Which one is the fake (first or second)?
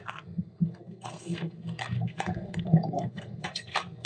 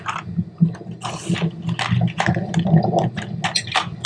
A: first